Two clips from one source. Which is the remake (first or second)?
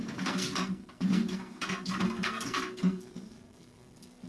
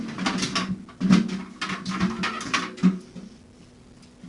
first